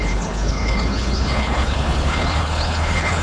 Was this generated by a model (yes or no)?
yes